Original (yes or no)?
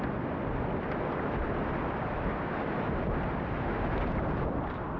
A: yes